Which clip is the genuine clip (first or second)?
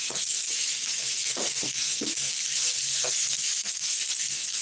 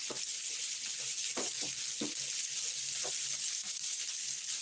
second